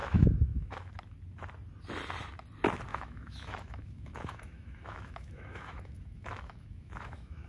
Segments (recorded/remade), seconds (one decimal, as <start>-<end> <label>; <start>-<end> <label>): 0.0-0.9 remade; 0.9-2.9 recorded; 2.9-7.5 remade